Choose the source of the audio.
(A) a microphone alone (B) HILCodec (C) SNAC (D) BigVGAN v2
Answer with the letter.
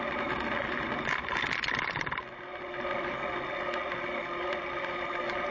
A